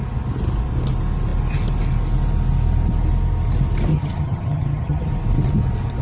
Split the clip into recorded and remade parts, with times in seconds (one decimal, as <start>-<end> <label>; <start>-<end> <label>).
0.0-3.9 recorded; 3.9-5.1 remade; 5.1-6.0 recorded